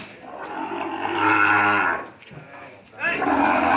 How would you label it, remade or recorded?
recorded